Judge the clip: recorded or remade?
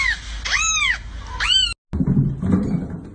recorded